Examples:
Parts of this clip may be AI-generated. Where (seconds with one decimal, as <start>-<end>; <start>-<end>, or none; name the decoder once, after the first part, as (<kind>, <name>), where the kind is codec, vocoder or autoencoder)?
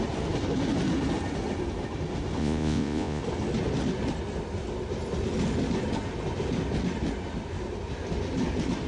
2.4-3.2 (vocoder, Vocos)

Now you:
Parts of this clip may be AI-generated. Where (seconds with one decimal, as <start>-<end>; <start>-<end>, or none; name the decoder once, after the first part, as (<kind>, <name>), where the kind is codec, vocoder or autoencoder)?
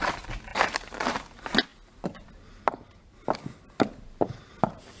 none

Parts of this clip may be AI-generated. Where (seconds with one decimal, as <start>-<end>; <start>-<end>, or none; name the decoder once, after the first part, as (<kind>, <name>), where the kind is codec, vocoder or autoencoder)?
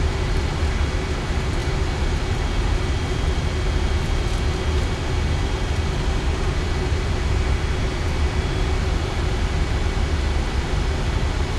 none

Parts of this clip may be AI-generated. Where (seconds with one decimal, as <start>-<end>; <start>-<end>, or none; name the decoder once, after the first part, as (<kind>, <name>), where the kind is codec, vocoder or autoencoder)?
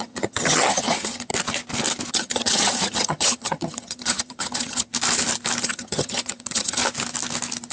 0.0-1.3 (vocoder, HiFi-GAN); 2.1-4.9; 5.6-6.8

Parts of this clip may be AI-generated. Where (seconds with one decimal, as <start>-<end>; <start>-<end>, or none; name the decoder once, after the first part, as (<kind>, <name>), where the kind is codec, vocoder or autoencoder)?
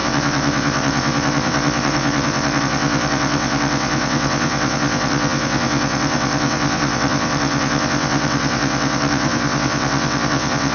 0.0-10.7 (vocoder, WaveNeXt)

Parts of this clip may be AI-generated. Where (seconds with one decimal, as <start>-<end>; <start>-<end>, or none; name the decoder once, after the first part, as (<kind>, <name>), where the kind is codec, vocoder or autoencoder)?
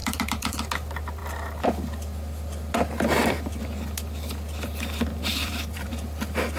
0.0-0.6 (vocoder, BigVGAN v2); 5.3-5.9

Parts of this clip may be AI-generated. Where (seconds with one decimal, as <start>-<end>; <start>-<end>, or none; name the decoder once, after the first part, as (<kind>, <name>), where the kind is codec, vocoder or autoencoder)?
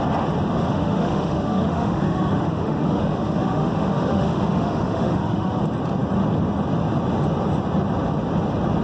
0.7-5.6 (autoencoder, DAC-VAE)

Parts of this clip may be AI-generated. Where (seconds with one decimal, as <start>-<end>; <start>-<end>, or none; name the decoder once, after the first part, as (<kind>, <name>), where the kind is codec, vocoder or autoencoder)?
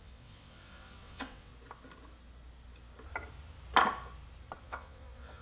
0.0-1.5 (vocoder, WaveNeXt); 4.6-5.4